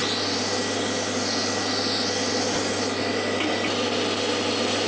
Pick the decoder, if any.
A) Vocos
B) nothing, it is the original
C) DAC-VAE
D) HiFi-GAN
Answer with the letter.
B